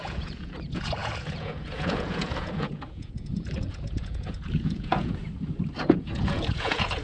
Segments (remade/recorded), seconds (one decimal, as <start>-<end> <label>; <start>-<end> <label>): 0.0-5.2 remade; 5.2-5.8 recorded; 5.8-7.0 remade